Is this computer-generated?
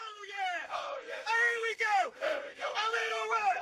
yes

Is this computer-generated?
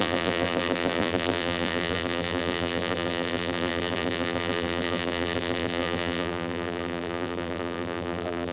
yes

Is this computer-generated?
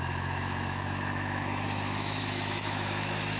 yes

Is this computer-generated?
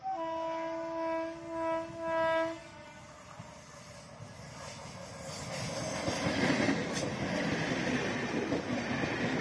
no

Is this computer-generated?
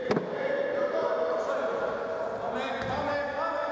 no